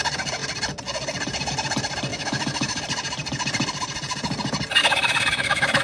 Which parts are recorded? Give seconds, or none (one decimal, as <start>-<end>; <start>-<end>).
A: 0.0-2.1; 2.8-4.8